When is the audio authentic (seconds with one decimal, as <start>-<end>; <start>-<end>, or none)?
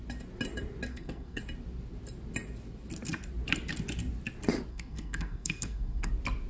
0.0-0.9; 1.4-4.7; 6.1-6.5